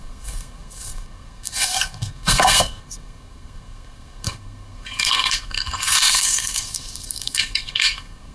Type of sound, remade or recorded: remade